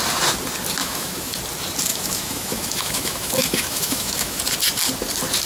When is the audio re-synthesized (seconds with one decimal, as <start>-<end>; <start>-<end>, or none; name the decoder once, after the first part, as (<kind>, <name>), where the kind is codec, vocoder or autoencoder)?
0.8-1.4 (autoencoder, DAC-VAE); 1.9-4.4